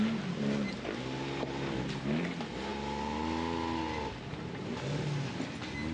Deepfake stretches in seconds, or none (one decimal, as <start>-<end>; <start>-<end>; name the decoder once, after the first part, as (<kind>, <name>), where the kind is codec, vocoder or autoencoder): none